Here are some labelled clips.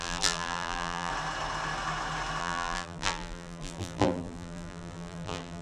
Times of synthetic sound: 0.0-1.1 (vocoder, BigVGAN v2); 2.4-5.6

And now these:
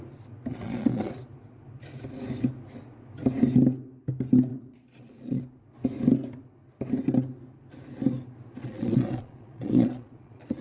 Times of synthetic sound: 0.5-1.1 (vocoder, Vocos); 4.5-5.4; 8.6-10.6

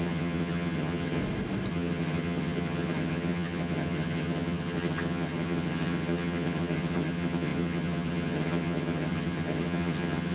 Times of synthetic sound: 0.0-1.2 (vocoder, HiFi-GAN); 1.7-10.3

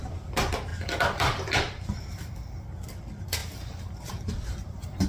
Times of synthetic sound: none

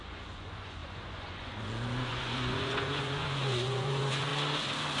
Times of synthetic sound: 0.0-4.3 (vocoder, Vocos)

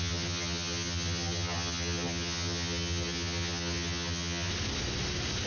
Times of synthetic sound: 0.0-4.5 (vocoder, HiFi-GAN)